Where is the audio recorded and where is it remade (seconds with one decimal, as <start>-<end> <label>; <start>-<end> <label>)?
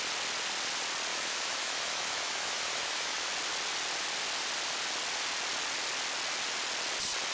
0.0-1.1 recorded; 1.1-3.3 remade; 3.3-7.3 recorded